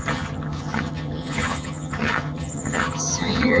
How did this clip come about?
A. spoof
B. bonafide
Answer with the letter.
A